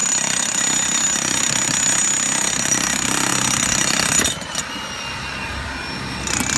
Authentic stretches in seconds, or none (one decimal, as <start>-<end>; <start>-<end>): 0.0-6.6